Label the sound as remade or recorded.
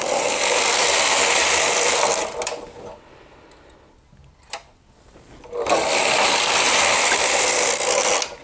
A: recorded